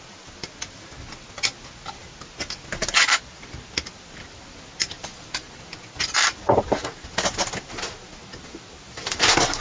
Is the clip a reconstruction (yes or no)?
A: no